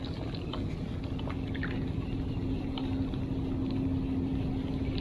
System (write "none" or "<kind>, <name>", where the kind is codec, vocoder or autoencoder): none